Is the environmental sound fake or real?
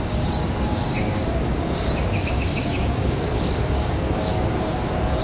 fake